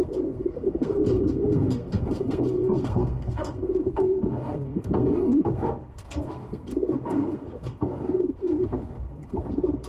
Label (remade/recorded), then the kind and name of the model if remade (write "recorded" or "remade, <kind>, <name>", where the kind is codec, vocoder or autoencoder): remade, codec, SNAC